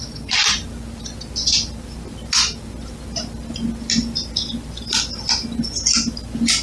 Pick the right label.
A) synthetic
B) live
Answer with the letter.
B